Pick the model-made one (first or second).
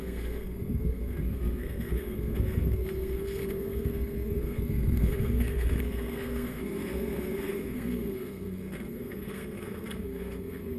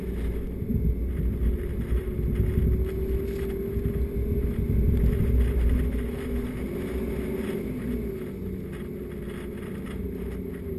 first